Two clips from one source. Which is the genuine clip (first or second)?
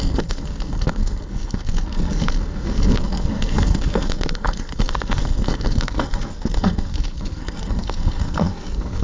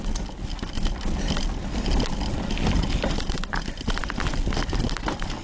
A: second